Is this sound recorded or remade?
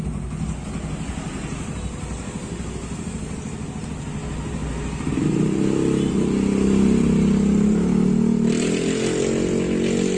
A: recorded